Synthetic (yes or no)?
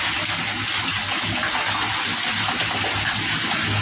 no